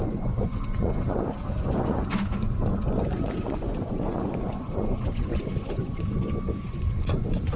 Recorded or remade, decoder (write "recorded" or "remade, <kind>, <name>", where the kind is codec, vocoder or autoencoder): remade, vocoder, Vocos